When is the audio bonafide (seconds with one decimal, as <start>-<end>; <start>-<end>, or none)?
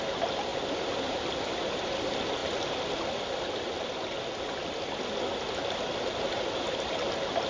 0.0-7.5